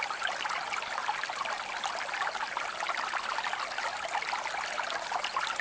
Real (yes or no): yes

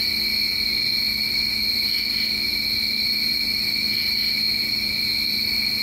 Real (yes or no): yes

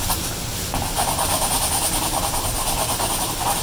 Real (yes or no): yes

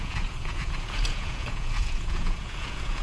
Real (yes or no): no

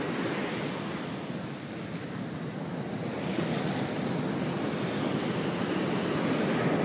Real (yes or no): yes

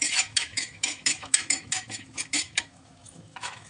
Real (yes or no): no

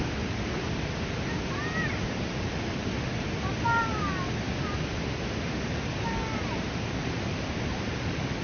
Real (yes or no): yes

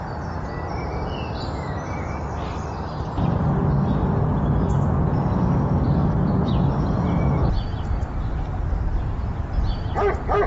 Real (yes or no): yes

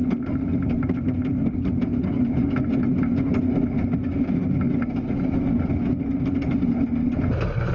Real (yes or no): yes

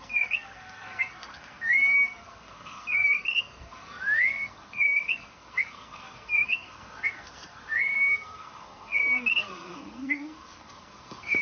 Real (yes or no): no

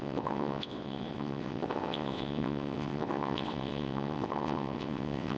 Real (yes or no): no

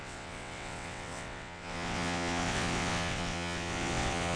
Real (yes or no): no